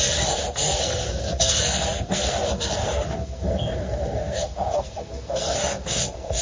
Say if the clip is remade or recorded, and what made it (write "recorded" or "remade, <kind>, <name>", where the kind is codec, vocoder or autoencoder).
remade, codec, SNAC